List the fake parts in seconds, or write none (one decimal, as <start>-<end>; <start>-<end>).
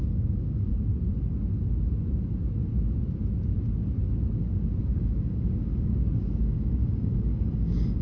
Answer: 0.0-0.7; 4.8-5.9; 6.4-8.0